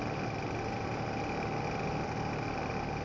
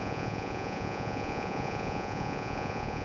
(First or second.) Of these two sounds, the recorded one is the first